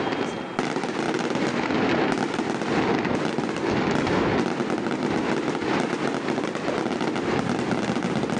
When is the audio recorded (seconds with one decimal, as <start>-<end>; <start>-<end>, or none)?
0.0-8.4

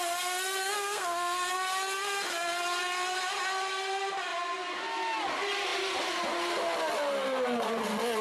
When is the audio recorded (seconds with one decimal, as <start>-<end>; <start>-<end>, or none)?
0.0-0.6; 1.5-8.2

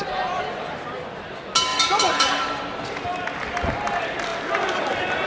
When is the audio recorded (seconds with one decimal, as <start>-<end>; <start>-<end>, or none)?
0.0-1.7; 2.8-5.3

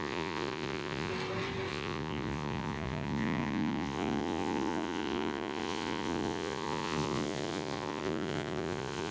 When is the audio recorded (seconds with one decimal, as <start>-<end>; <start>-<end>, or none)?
1.1-1.7

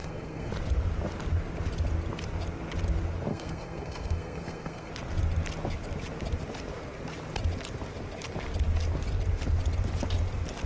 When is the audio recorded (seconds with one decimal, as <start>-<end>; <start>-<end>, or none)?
0.5-3.3; 4.9-10.7

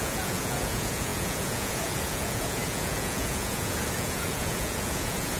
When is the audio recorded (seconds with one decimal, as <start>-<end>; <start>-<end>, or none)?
none